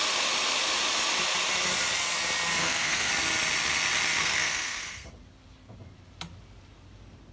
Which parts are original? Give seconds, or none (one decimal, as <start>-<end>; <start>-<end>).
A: 0.0-2.6; 3.1-4.2; 5.1-7.3